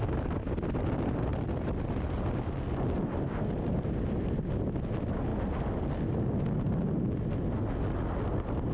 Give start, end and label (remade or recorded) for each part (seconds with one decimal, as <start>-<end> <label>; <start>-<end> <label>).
0.0-5.3 recorded; 5.3-5.9 remade; 5.9-8.7 recorded